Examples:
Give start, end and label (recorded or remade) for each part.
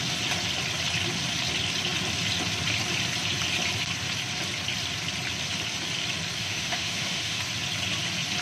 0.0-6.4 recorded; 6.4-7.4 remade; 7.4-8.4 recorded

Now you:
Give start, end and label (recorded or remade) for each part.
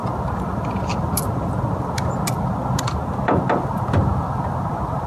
0.0-5.1 recorded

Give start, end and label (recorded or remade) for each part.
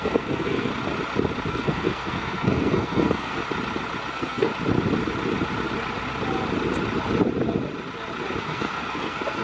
0.0-0.7 remade; 0.7-1.5 recorded; 1.5-3.4 remade; 3.4-4.1 recorded; 4.1-4.5 remade; 4.5-8.4 recorded; 8.4-9.4 remade